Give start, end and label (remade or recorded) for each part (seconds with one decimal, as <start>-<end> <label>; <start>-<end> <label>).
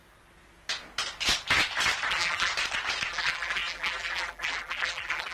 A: 0.0-2.1 recorded; 2.1-2.5 remade; 2.5-3.1 recorded; 3.1-5.3 remade